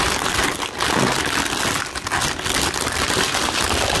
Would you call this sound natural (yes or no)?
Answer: yes